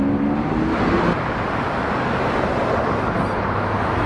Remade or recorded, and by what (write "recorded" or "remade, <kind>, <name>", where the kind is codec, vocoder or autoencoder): recorded